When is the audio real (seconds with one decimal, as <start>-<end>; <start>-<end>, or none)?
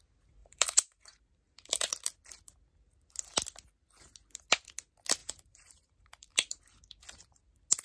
0.0-0.4; 1.9-5.2; 6.6-7.8